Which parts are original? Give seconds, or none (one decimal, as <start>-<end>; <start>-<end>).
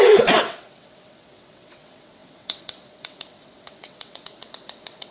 none